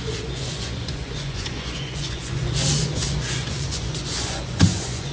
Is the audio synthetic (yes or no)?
yes